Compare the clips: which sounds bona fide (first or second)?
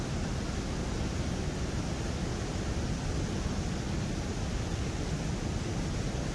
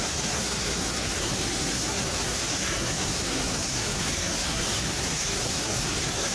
first